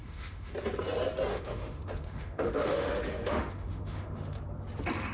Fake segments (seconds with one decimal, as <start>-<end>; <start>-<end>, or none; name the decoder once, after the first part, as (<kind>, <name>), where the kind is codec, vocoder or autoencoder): 0.0-0.5 (autoencoder, DAC-VAE); 1.3-4.4